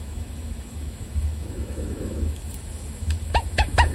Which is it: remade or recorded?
remade